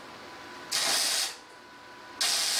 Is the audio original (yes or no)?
yes